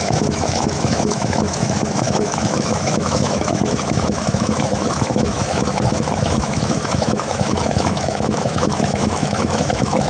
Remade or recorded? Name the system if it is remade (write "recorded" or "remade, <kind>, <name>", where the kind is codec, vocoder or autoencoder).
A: remade, autoencoder, DAC-VAE